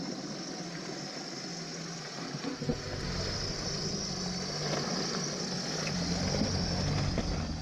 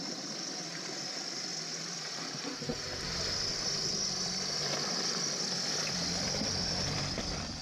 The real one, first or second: first